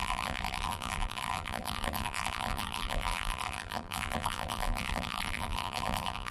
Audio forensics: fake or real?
fake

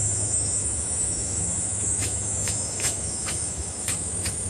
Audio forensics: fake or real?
fake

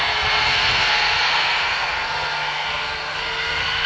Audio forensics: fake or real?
fake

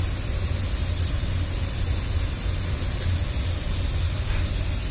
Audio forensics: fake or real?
real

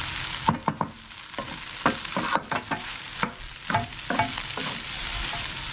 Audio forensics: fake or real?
real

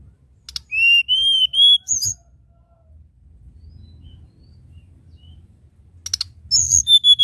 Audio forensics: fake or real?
real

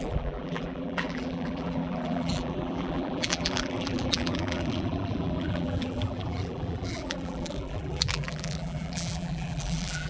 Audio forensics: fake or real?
fake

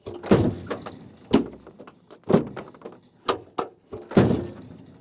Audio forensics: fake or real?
real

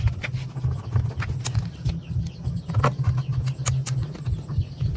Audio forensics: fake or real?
real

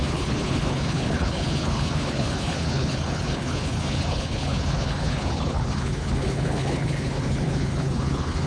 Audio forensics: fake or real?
fake